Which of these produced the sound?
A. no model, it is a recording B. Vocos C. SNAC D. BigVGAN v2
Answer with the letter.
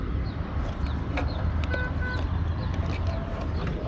A